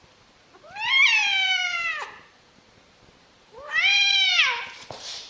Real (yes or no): no